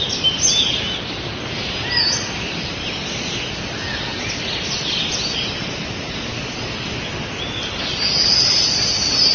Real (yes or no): yes